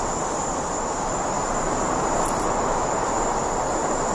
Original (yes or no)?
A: yes